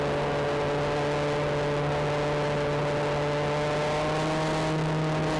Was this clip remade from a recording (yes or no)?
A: no